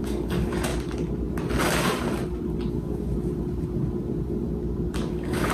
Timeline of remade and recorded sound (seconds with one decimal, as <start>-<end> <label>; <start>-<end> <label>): 0.0-0.7 remade; 0.7-2.7 recorded; 2.7-3.1 remade; 3.1-5.1 recorded; 5.1-5.5 remade